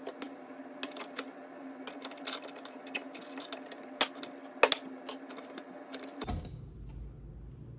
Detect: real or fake real